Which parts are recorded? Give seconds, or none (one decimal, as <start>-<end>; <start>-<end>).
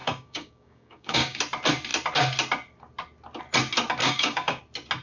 1.4-4.0; 4.6-5.0